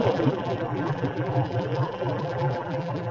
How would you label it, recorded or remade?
remade